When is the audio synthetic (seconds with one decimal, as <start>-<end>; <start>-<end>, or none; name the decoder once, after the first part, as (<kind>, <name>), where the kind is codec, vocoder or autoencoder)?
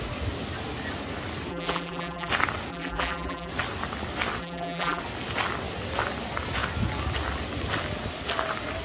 1.5-2.3 (vocoder, BigVGAN v2); 2.7-3.5; 4.4-5.0